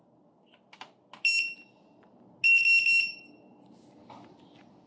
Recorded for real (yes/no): yes